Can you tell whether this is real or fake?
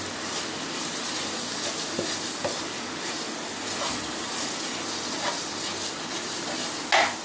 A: real